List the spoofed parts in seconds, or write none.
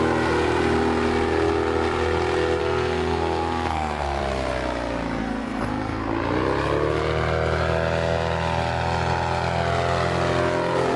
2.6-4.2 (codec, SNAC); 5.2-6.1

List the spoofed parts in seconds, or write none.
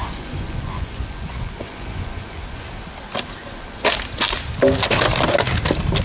0.0-2.7 (vocoder, Vocos); 3.4-3.9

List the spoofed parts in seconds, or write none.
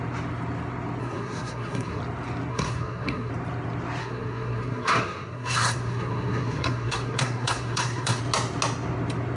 1.0-2.0 (codec, SNAC); 2.5-3.3; 4.0-8.2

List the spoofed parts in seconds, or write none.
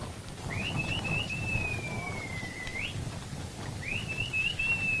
none